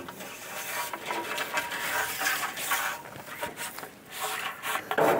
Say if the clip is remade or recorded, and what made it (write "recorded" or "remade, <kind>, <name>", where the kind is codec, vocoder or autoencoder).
recorded